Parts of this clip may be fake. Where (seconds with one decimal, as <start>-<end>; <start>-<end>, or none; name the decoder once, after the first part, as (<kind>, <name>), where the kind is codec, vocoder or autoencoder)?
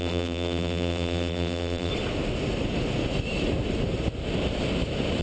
0.0-1.9 (vocoder, BigVGAN v2)